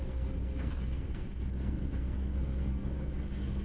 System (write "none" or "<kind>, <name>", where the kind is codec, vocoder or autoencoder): codec, SNAC